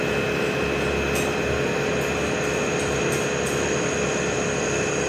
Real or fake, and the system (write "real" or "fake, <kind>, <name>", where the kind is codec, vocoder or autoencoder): real